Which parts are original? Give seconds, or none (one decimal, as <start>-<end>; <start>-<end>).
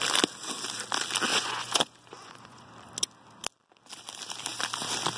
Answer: 0.0-1.3; 2.7-5.2